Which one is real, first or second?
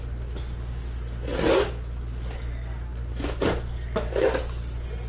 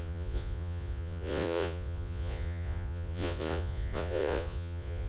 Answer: first